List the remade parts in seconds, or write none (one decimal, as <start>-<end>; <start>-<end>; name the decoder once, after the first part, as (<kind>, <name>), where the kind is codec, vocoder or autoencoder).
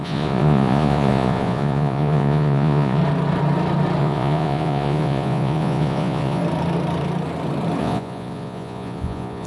0.0-3.0 (vocoder, Vocos); 4.0-6.4; 7.8-9.5